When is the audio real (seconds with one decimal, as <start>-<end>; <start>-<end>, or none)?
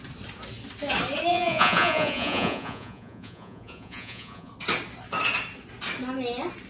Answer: 0.0-1.3; 4.5-6.7